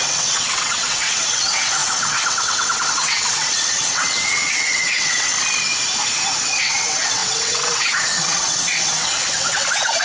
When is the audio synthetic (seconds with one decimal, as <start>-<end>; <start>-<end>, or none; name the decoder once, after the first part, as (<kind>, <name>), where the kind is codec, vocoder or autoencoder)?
0.0-5.3 (vocoder, WaveNeXt); 6.6-10.0